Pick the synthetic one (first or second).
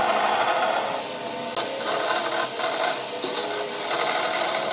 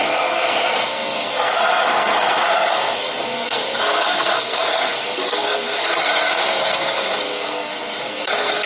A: second